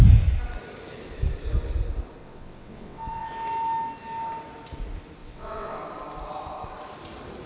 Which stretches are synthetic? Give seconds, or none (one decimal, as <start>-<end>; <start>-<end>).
2.2-3.3; 5.2-5.8